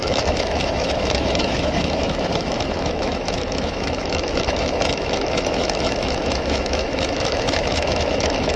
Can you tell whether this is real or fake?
fake